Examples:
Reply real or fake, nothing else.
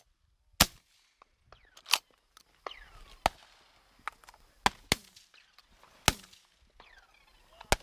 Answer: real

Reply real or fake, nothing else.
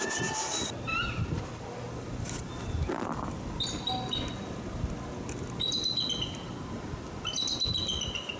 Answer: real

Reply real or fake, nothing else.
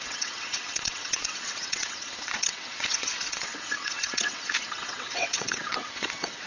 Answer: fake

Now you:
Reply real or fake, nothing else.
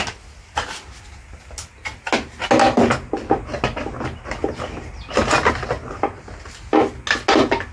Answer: real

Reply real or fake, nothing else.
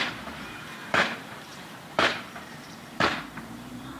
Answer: fake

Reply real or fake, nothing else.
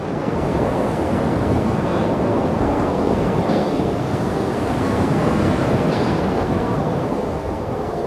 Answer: fake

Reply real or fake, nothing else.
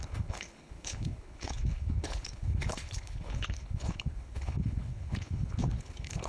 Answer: fake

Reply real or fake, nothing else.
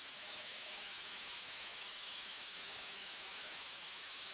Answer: fake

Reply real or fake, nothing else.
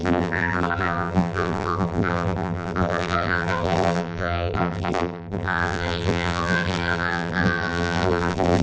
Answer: fake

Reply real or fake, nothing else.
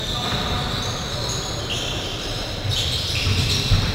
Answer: real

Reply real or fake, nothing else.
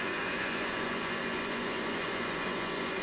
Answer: fake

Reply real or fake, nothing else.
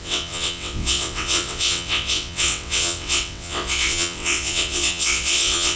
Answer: fake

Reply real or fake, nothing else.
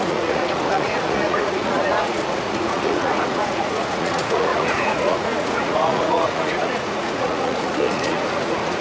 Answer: fake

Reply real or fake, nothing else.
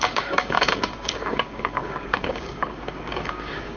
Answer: fake